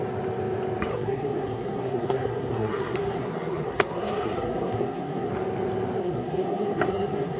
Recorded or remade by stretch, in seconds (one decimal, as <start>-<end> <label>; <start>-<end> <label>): 0.0-0.9 recorded; 0.9-5.3 remade; 5.3-6.0 recorded; 6.0-7.4 remade